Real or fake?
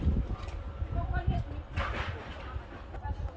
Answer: real